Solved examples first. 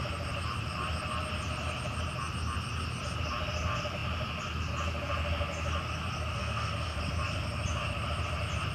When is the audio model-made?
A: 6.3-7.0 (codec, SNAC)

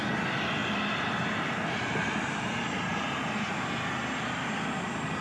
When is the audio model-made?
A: 0.6-2.1 (vocoder, BigVGAN v2); 2.9-3.5

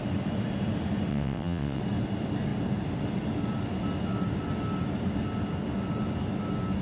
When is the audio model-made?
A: 1.1-1.8 (vocoder, WaveNeXt)

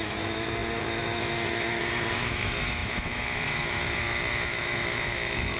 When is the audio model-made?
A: 0.0-5.6 (autoencoder, DAC-VAE)

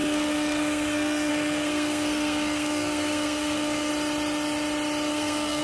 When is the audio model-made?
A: 0.0-3.9 (codec, SNAC); 5.1-5.6

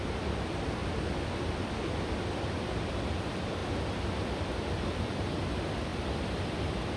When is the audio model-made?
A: 0.0-0.8 (vocoder, BigVGAN v2); 1.3-3.6; 4.4-5.9; 6.6-7.0